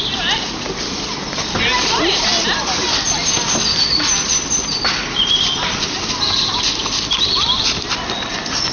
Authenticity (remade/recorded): recorded